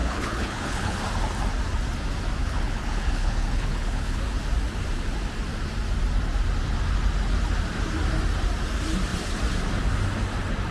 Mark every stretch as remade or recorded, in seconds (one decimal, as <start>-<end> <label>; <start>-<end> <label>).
0.0-1.0 remade; 1.0-2.4 recorded; 2.4-4.2 remade; 4.2-10.7 recorded